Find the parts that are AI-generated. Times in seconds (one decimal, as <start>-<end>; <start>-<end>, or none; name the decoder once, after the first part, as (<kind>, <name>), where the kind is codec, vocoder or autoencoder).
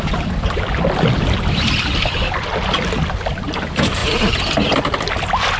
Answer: none